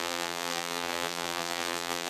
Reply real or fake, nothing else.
fake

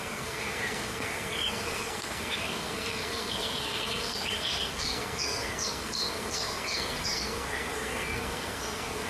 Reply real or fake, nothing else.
fake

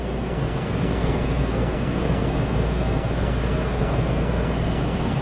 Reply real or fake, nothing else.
fake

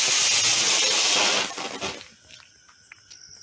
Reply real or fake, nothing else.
real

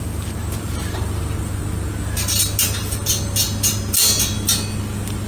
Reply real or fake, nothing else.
real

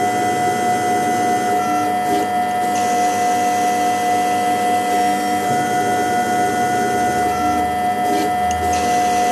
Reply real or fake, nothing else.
real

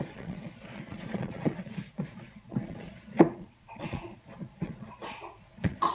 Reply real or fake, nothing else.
fake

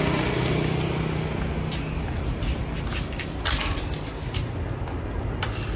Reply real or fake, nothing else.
real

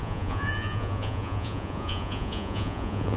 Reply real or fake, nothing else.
fake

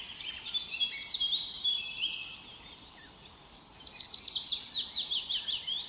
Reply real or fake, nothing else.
fake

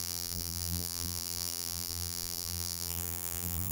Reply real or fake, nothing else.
fake